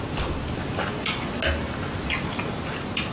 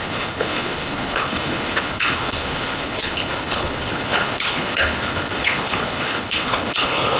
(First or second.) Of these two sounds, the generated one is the second